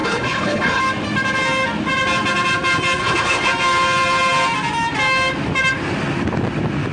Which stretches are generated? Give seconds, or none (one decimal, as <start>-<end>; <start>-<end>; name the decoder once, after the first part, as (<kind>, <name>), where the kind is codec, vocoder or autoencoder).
0.0-0.8 (codec, HILCodec); 3.0-3.5